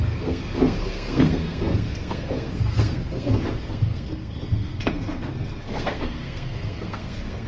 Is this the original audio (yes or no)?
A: no